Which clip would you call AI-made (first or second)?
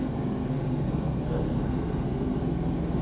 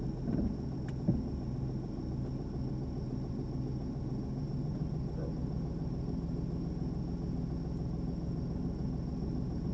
first